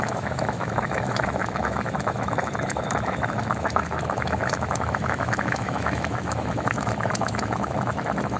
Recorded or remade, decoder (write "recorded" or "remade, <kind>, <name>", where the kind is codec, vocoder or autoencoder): remade, autoencoder, DAC-VAE